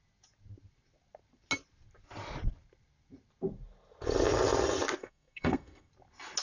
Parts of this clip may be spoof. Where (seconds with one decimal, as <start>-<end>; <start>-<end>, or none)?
5.0-5.9